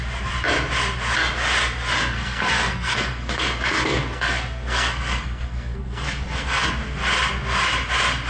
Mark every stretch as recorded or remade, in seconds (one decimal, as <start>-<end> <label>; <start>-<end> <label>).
0.0-2.0 recorded; 2.0-6.7 remade; 6.7-8.3 recorded